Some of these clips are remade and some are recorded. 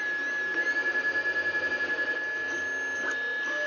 recorded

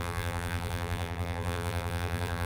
remade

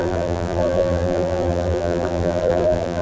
remade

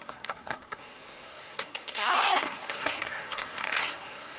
remade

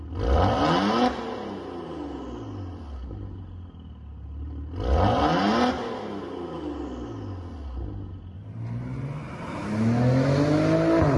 recorded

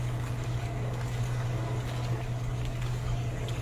remade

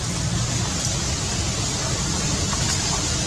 recorded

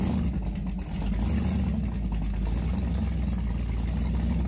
recorded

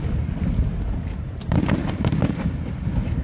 recorded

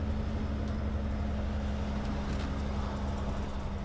recorded